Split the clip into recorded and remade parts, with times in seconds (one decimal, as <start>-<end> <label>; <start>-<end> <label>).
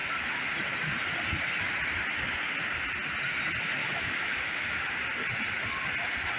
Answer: 0.0-3.8 recorded; 3.8-5.0 remade; 5.0-6.4 recorded